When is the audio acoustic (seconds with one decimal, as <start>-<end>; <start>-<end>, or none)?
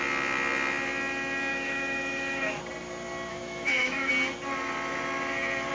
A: 0.0-1.5; 2.6-3.3; 4.1-5.7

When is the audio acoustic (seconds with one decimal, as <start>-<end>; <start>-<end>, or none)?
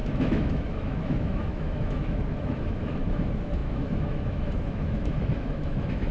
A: none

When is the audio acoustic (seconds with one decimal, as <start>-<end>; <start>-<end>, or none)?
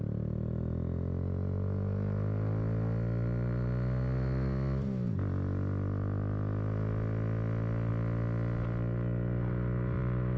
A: 0.0-10.4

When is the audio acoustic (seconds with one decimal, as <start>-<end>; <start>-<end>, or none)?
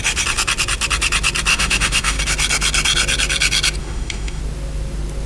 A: 0.0-1.5; 2.2-3.8; 4.4-5.3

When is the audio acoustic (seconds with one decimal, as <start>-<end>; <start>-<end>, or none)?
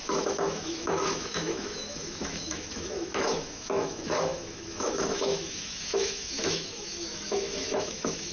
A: none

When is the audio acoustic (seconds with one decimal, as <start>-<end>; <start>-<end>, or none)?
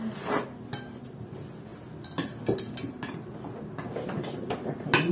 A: 0.0-5.1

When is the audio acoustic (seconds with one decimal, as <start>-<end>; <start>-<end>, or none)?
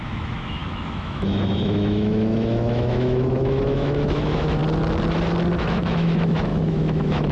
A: 4.6-5.6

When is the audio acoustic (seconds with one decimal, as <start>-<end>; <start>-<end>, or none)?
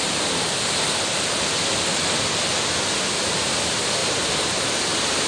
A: 0.0-5.3